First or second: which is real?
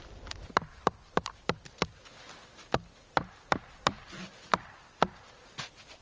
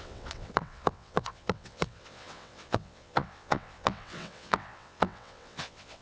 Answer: first